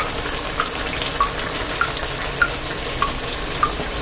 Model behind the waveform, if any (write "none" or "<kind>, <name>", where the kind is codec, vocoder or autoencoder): none